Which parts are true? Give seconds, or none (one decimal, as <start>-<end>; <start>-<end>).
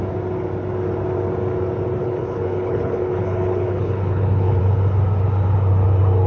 0.0-2.0; 4.6-6.3